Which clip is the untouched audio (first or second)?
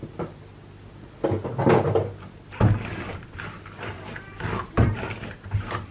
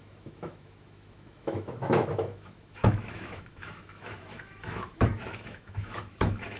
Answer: first